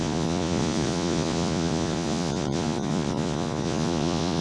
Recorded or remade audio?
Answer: remade